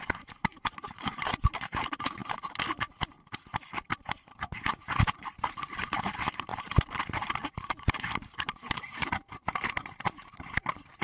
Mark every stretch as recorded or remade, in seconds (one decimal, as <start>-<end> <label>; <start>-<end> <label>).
0.0-2.2 remade; 2.2-3.9 recorded; 3.9-6.5 remade; 6.5-7.5 recorded; 7.5-11.0 remade